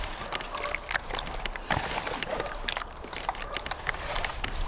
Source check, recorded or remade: recorded